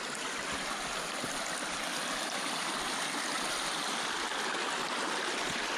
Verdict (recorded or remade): recorded